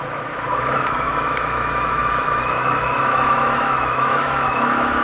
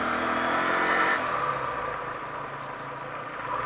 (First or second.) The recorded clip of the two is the second